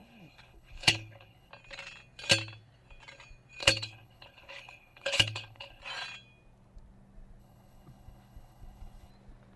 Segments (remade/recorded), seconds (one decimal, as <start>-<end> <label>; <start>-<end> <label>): 0.0-1.5 remade; 1.5-3.6 recorded; 3.6-5.8 remade; 5.8-7.4 recorded; 7.4-9.1 remade; 9.1-9.6 recorded